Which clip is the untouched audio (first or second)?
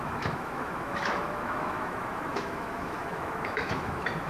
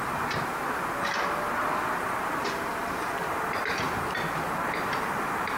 second